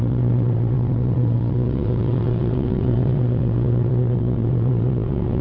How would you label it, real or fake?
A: fake